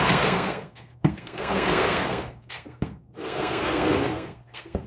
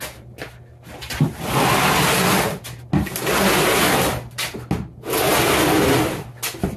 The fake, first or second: first